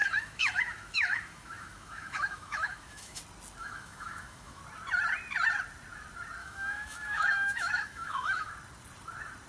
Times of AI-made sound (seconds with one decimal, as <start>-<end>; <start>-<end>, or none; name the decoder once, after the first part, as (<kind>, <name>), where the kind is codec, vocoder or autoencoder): 0.0-3.2 (autoencoder, DAC-VAE); 3.6-4.6; 6.4-8.5

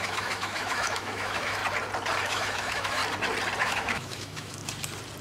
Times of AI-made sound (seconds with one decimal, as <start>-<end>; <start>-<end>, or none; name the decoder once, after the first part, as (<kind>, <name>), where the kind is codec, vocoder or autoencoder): 0.0-1.6 (autoencoder, DAC-VAE); 2.2-3.0; 3.6-4.6

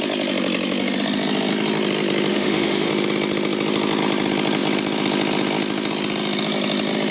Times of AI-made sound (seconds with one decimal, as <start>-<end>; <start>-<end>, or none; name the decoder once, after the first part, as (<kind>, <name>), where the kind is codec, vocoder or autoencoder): 2.3-2.9 (autoencoder, DAC-VAE)

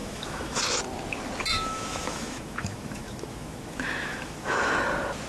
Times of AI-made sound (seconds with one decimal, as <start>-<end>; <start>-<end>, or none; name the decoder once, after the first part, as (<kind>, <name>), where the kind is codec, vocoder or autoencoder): 0.0-0.6 (autoencoder, DAC-VAE); 1.5-4.7